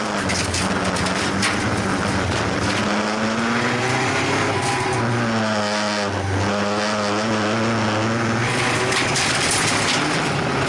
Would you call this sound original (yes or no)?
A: yes